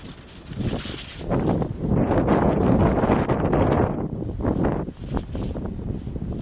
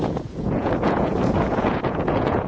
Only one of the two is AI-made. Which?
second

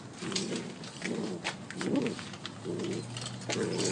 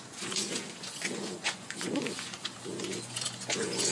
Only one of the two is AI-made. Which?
second